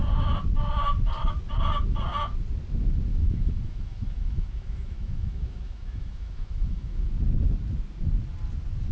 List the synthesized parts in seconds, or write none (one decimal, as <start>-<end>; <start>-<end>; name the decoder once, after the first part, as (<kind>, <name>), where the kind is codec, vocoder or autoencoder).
3.1-7.1 (autoencoder, DAC-VAE)

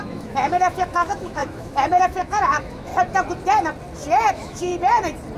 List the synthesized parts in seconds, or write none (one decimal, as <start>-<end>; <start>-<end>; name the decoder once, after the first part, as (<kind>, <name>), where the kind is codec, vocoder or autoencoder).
0.0-2.9 (autoencoder, DAC-VAE); 4.3-4.7

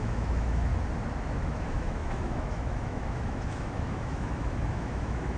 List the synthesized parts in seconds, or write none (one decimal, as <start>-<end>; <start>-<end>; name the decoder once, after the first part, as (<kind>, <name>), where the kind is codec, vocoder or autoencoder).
0.0-0.7 (autoencoder, DAC-VAE); 1.3-5.4

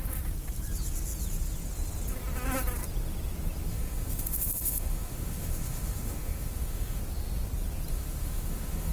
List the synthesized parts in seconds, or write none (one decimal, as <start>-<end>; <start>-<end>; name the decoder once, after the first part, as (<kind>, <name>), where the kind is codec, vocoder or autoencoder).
3.7-7.0 (autoencoder, DAC-VAE); 7.9-8.9